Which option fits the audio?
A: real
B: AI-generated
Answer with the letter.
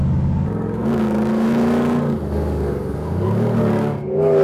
B